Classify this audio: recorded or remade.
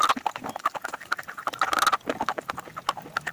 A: recorded